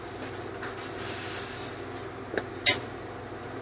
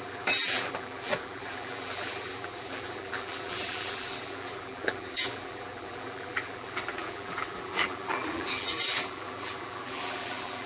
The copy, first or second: second